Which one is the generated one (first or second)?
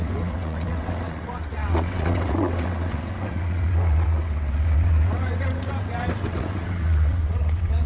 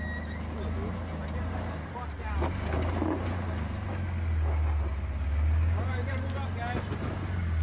first